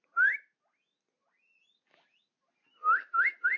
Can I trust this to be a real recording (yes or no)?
yes